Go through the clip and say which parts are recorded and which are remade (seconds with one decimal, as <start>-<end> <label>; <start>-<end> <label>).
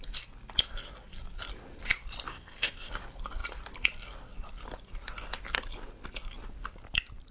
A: 0.0-2.3 recorded; 2.3-2.9 remade; 2.9-7.3 recorded